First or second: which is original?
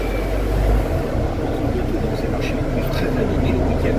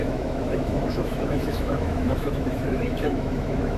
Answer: first